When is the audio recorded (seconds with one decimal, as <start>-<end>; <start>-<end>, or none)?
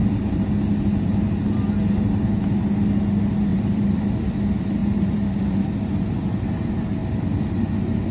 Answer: 0.0-3.5; 4.1-4.8; 5.9-8.1